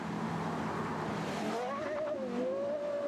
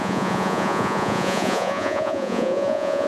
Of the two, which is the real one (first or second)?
first